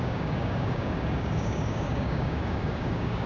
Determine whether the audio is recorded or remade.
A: remade